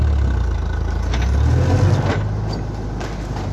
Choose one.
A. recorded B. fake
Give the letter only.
A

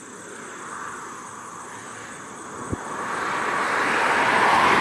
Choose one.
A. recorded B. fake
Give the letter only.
A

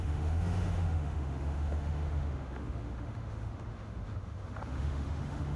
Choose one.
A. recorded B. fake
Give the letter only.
B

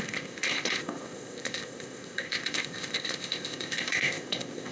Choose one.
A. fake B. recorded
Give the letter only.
A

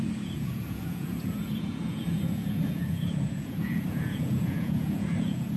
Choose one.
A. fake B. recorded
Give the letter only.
A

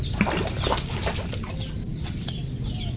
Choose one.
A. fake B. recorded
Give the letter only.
B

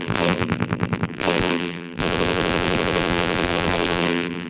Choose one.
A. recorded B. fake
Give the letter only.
B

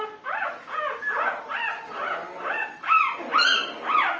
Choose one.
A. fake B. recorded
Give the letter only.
B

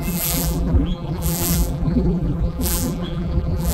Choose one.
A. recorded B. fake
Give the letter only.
B